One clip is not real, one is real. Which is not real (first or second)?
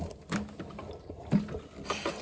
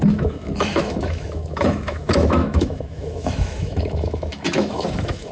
second